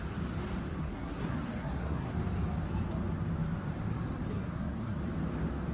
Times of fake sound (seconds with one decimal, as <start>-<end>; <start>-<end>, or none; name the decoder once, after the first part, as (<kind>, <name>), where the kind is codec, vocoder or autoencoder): 0.8-2.1 (codec, SNAC); 4.3-5.0